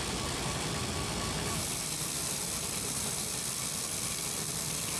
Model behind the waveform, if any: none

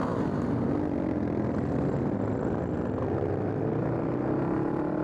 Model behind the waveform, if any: none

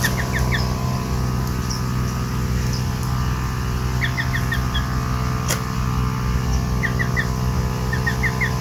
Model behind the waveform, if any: none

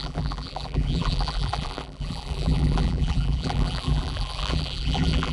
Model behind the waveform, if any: vocoder, BigVGAN v2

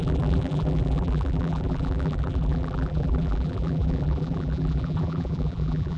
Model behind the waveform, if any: vocoder, BigVGAN v2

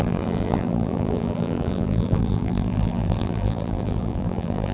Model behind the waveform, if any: vocoder, BigVGAN v2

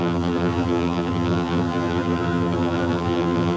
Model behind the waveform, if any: vocoder, BigVGAN v2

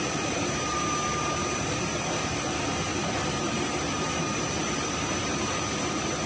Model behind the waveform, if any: vocoder, BigVGAN v2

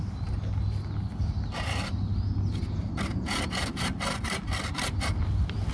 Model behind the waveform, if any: none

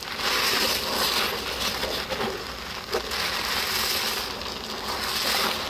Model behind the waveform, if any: none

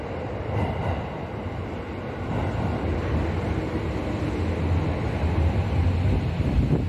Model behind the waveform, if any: none